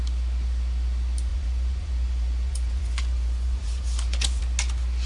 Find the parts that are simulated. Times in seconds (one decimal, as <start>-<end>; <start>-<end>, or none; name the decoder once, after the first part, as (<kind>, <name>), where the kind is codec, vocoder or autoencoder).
1.3-4.4 (vocoder, Vocos)